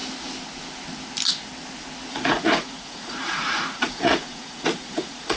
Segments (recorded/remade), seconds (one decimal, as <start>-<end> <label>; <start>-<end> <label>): 0.0-2.1 recorded; 2.1-5.4 remade